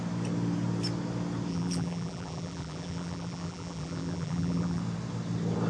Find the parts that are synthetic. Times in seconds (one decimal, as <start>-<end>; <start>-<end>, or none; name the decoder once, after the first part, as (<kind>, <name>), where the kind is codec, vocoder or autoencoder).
1.5-4.8 (vocoder, BigVGAN v2)